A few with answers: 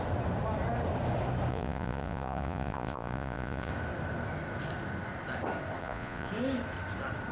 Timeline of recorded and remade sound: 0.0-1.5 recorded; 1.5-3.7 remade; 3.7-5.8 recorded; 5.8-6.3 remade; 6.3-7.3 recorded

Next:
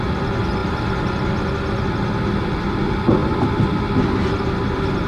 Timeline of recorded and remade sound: 0.0-5.1 recorded